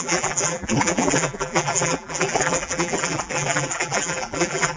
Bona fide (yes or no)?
no